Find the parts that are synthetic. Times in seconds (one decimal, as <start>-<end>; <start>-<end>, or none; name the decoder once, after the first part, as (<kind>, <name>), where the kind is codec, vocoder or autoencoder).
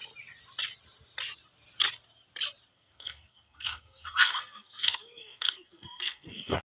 2.7-6.6 (codec, SNAC)